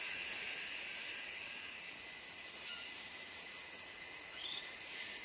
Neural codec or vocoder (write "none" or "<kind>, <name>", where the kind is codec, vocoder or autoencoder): vocoder, Vocos